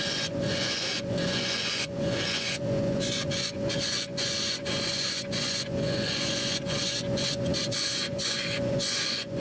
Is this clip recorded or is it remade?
remade